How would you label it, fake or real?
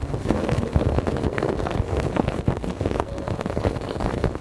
fake